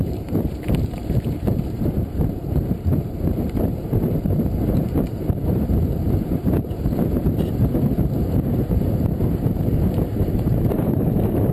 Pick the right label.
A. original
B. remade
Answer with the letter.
B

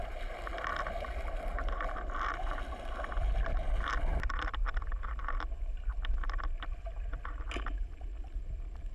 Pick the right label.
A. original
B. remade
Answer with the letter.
A